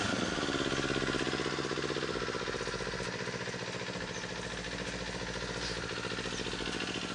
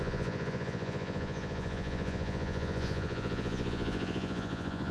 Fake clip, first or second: second